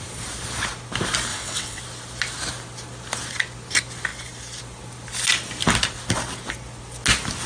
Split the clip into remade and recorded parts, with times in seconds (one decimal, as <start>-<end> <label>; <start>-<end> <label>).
0.0-1.3 recorded; 1.3-1.8 remade; 1.8-7.5 recorded